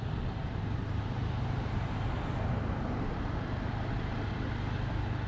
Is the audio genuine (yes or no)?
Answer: yes